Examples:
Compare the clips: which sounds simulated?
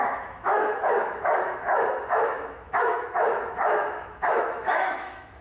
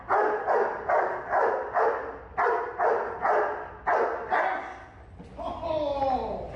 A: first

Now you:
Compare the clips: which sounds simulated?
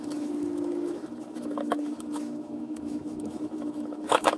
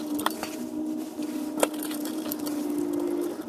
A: first